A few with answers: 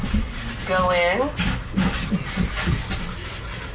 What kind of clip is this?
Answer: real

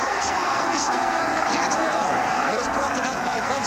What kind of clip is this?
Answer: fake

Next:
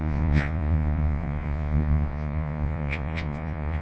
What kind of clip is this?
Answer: fake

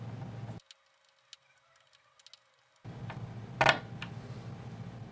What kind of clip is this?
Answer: real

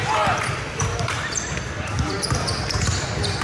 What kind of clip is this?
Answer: fake